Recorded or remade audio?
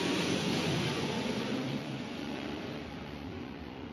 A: remade